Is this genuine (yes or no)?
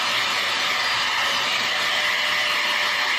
yes